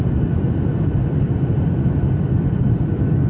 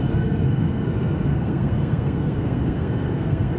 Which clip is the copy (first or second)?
second